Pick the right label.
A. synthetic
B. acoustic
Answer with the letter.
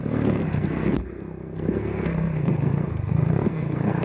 A